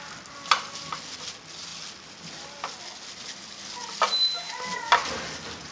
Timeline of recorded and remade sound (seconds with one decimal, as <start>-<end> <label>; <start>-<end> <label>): 0.0-5.7 recorded